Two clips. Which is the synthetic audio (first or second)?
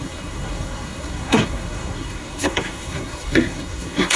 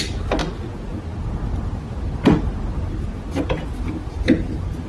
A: first